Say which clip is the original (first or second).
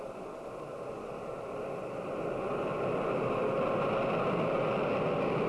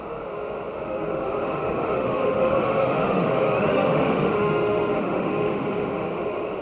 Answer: first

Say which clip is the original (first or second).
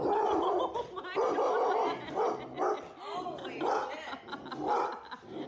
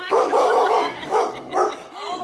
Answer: first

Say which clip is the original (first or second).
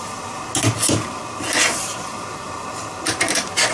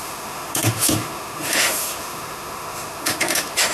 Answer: first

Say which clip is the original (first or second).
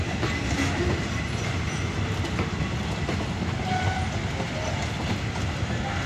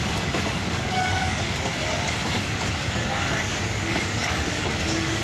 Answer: first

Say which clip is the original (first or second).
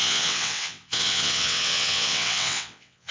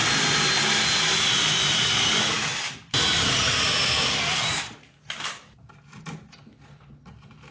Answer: second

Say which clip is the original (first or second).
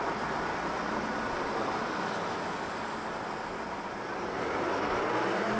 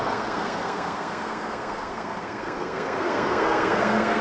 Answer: first